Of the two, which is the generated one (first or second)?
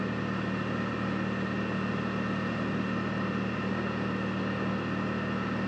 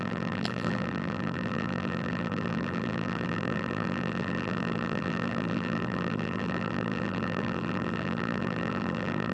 second